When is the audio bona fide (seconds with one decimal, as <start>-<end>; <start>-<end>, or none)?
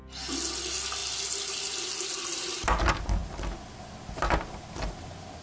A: 0.0-5.4